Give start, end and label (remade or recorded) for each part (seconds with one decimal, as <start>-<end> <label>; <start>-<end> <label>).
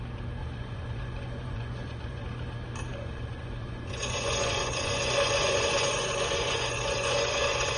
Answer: 0.0-0.4 recorded; 0.4-2.2 remade; 2.2-2.9 recorded; 2.9-7.8 remade